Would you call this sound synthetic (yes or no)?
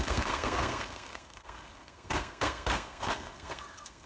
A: yes